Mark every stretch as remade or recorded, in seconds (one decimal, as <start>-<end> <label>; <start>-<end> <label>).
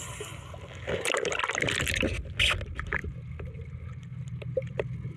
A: 0.0-5.2 recorded